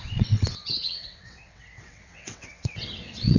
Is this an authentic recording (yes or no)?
no